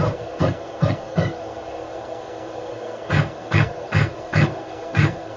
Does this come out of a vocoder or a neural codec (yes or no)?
yes